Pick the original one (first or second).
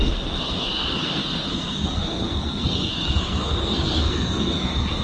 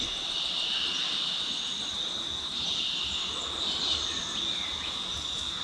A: second